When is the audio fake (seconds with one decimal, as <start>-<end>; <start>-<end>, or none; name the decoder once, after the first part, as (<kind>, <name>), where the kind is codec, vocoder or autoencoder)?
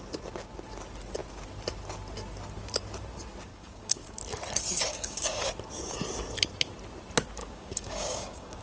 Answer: 3.5-4.2 (codec, DAC); 4.9-5.5; 7.4-8.6